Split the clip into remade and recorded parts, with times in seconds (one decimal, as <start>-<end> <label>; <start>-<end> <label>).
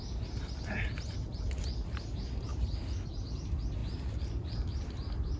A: 0.0-5.4 recorded